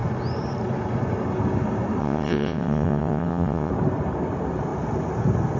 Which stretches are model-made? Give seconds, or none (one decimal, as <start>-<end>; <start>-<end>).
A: 2.0-3.7